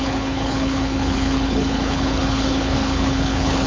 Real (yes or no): no